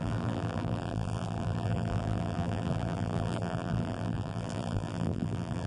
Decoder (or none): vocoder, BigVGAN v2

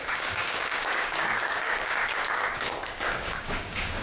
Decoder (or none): codec, DAC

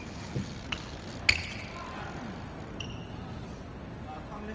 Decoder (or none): none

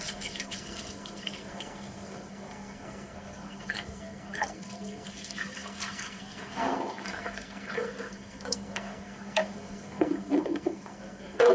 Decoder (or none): codec, SNAC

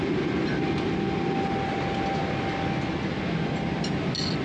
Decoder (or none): none